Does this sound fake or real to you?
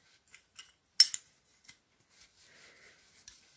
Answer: real